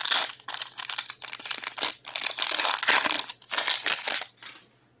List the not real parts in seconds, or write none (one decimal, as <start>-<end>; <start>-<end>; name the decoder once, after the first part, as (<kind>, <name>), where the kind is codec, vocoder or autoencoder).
none